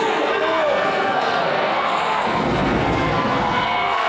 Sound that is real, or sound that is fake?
fake